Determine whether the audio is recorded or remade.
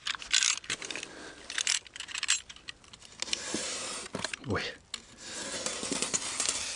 recorded